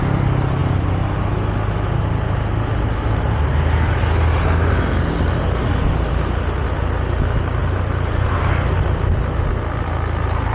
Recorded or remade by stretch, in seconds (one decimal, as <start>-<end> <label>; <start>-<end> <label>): 0.0-7.6 recorded; 7.6-8.5 remade; 8.5-10.5 recorded